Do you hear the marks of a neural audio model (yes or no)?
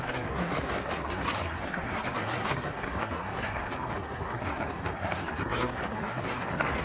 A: yes